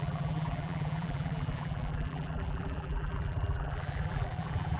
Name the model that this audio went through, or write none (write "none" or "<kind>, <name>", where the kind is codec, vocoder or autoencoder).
vocoder, BigVGAN v2